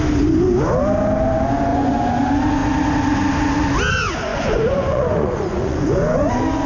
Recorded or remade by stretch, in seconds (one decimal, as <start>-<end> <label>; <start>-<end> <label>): 0.0-1.7 recorded; 1.7-2.2 remade; 2.2-4.3 recorded; 4.3-6.3 remade; 6.3-6.7 recorded